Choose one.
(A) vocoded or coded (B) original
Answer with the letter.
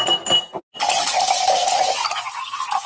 B